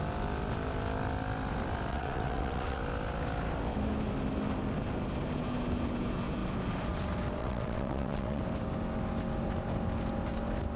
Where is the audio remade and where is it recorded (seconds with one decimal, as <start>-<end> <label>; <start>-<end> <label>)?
0.0-1.9 recorded; 1.9-2.8 remade; 2.8-7.4 recorded; 7.4-8.4 remade; 8.4-10.8 recorded